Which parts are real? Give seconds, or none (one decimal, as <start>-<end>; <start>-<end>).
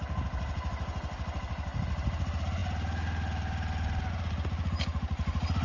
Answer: 0.0-5.6